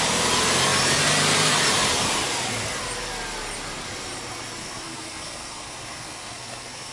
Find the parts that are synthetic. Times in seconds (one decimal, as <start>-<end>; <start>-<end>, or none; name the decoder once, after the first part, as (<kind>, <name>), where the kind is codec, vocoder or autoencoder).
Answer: 4.6-6.9 (codec, SNAC)

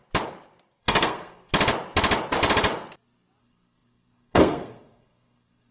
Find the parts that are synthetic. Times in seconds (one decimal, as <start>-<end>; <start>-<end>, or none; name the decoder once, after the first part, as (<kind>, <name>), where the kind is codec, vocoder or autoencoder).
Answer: 0.8-1.5 (codec, SNAC); 3.4-5.7

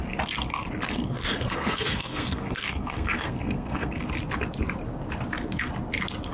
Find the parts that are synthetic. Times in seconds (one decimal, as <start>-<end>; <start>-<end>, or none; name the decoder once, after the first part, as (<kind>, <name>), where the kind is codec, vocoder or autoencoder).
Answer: 0.9-3.9 (codec, SNAC)

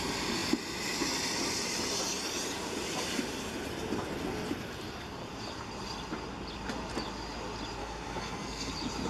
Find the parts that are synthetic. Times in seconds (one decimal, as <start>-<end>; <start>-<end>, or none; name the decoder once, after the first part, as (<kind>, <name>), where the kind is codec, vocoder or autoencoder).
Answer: 7.8-8.7 (codec, SNAC)